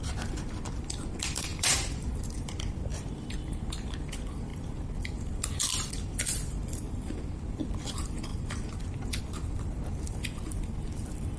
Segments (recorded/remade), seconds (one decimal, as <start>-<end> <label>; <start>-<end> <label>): 0.0-11.4 remade